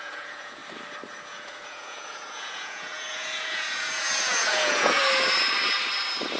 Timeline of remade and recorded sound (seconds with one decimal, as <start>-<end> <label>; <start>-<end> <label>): 0.0-0.6 remade; 0.6-1.2 recorded; 1.2-5.0 remade; 5.0-6.4 recorded